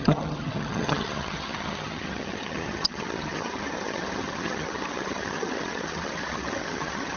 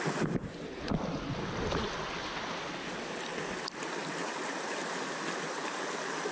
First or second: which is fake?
first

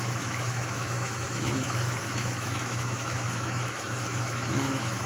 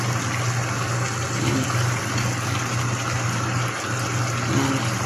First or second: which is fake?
first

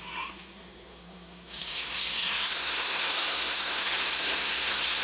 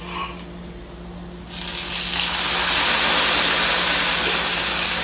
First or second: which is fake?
first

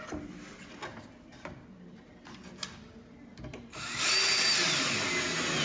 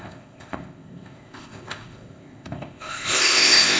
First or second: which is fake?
second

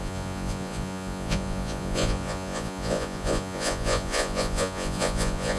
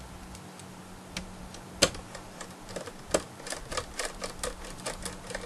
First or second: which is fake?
first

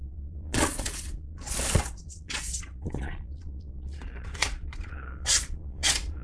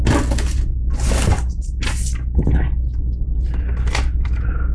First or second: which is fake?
first